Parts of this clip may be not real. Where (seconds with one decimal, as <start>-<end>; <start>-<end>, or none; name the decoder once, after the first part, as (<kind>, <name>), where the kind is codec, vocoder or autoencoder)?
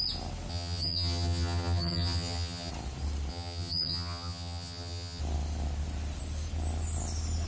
0.5-2.7 (vocoder, HiFi-GAN); 3.3-5.2